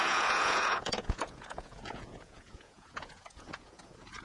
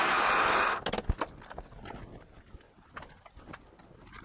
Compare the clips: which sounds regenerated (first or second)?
first